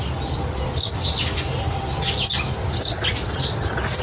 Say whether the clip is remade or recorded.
recorded